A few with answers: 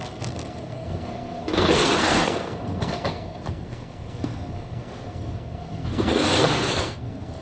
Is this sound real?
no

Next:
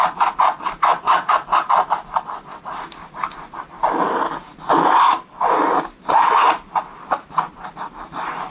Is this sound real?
yes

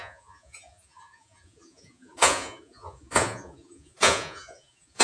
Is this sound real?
no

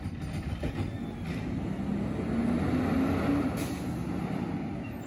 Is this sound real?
yes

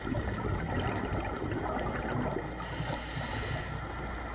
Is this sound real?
yes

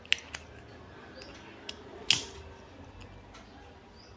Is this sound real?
yes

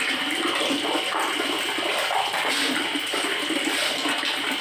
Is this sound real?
yes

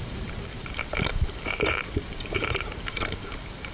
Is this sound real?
no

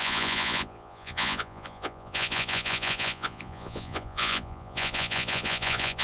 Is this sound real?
no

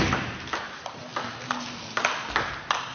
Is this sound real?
yes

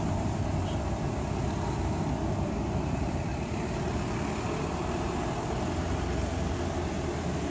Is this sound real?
yes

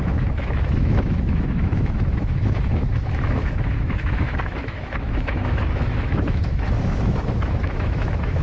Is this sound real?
no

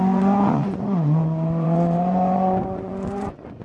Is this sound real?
no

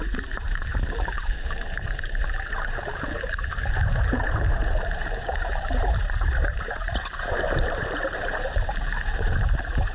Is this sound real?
no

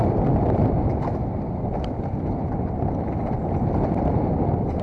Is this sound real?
no